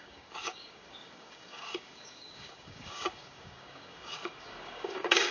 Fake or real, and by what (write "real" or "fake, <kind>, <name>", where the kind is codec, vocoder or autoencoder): fake, codec, DAC